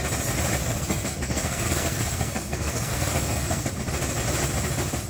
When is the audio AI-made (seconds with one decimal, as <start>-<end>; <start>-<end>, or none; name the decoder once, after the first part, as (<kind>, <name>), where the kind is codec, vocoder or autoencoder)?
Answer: 0.6-3.7 (codec, SNAC)